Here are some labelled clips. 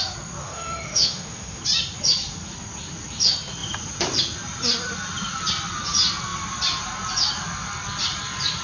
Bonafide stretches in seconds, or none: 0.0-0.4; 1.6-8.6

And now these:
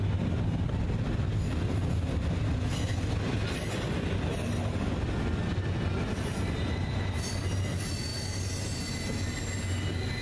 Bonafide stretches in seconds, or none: 0.0-10.2

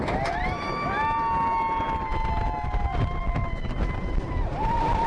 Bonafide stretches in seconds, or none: 0.0-5.1

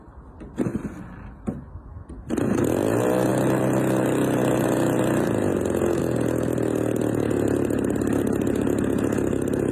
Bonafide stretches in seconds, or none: 0.0-9.7